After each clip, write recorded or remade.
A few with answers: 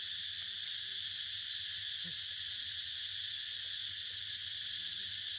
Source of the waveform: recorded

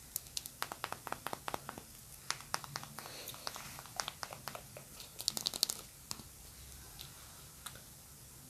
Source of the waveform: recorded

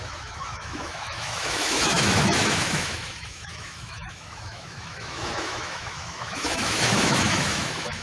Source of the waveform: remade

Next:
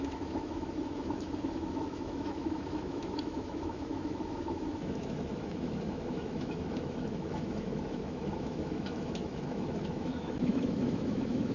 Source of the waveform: remade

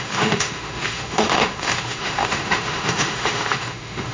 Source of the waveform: remade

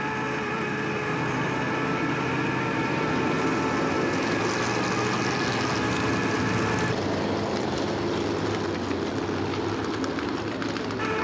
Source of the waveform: recorded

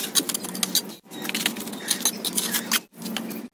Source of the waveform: recorded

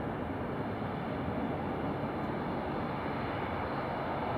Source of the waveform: recorded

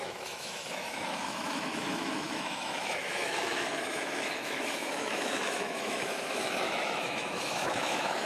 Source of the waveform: remade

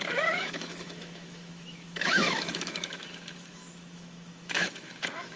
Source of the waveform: remade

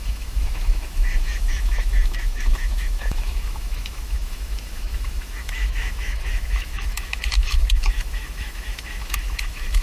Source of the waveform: remade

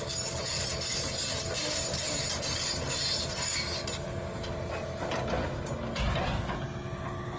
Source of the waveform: recorded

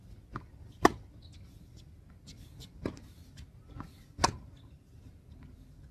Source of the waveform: recorded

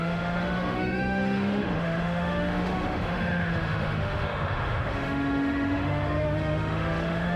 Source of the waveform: remade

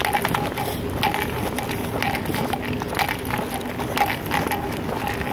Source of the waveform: recorded